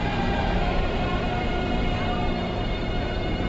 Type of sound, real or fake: fake